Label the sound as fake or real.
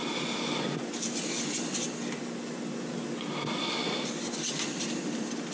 real